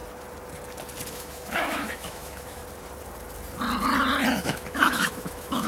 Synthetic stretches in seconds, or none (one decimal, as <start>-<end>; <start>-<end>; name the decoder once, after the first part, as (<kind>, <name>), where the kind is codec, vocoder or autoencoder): 1.1-2.6 (autoencoder, DAC-VAE); 4.3-5.7